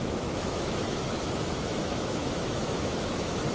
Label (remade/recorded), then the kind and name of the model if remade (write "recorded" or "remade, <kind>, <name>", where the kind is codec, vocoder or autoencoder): remade, autoencoder, DAC-VAE